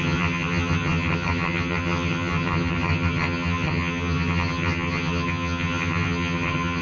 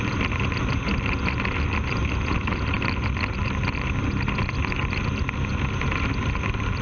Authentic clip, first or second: second